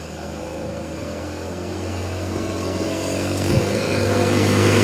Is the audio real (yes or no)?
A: no